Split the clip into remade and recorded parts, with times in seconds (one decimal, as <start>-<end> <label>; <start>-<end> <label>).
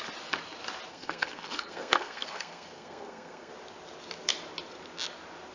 0.0-0.9 recorded; 0.9-3.5 remade; 3.5-5.5 recorded